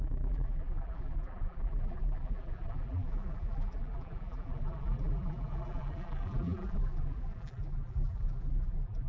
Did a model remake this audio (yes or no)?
yes